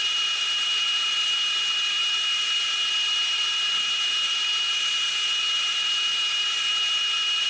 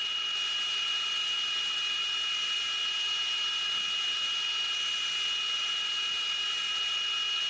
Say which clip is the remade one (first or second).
first